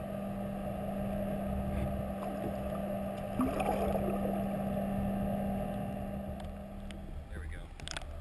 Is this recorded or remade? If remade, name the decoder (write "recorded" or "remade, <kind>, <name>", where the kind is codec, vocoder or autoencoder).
recorded